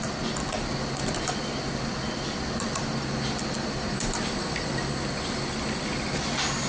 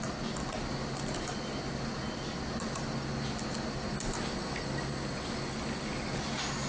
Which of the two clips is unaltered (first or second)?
second